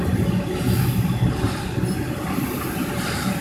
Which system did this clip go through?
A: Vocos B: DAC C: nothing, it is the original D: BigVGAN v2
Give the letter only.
C